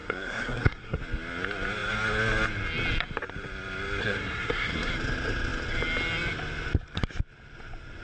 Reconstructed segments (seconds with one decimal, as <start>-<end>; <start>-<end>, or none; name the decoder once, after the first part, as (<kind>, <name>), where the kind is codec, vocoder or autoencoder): 0.0-1.0 (codec, SNAC); 4.0-4.9